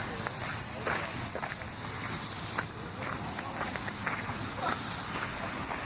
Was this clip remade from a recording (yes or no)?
no